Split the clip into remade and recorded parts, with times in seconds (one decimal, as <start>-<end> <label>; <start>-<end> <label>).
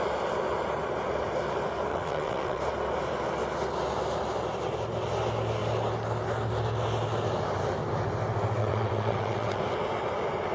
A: 0.0-1.9 recorded; 1.9-2.6 remade; 2.6-8.6 recorded; 8.6-9.6 remade; 9.6-10.5 recorded